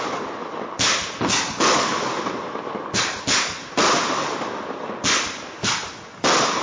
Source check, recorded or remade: recorded